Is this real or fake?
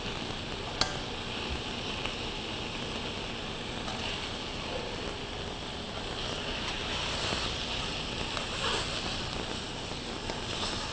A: real